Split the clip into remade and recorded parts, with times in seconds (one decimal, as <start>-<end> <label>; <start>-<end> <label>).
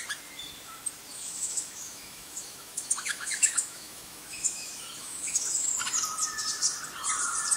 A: 0.0-1.1 recorded; 1.1-5.7 remade; 5.7-7.6 recorded